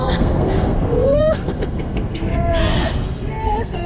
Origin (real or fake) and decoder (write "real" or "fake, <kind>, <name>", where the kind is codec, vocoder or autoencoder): fake, codec, SNAC